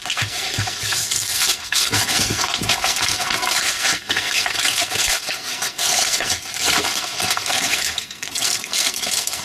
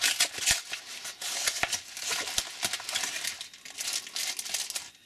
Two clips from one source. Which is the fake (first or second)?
first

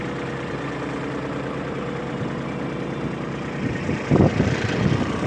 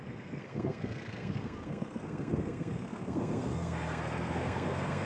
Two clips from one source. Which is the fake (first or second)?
second